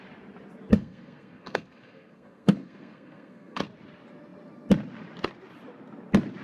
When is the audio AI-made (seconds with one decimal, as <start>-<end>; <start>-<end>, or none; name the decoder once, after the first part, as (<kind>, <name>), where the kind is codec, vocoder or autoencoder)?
0.7-3.6 (codec, SNAC)

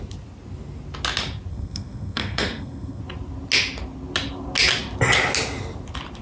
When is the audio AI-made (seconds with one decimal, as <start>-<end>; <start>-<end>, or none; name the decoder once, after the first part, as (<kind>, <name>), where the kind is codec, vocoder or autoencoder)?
1.5-3.0 (codec, SNAC)

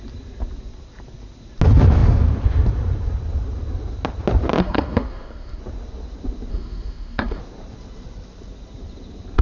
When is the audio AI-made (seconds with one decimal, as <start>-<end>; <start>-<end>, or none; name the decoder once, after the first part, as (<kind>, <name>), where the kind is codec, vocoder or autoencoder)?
4.6-5.6 (codec, SNAC); 6.5-7.4

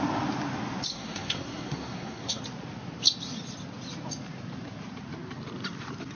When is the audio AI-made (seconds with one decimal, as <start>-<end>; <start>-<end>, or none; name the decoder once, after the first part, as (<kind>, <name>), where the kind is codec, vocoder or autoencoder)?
0.9-2.4 (codec, SNAC)

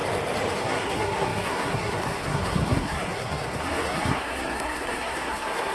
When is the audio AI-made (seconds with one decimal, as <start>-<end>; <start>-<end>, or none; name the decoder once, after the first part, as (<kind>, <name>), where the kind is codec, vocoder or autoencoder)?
0.6-5.7 (codec, SNAC)

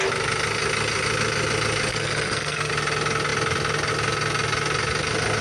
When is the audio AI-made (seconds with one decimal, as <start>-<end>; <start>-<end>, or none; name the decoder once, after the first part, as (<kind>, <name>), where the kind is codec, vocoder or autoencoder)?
1.9-2.7 (codec, SNAC)

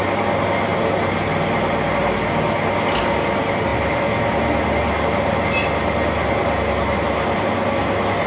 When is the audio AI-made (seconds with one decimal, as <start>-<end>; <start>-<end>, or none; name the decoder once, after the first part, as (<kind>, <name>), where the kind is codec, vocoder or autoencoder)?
none